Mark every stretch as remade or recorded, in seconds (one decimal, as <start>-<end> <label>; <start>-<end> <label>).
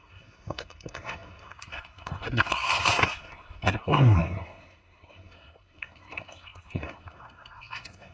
0.0-8.1 remade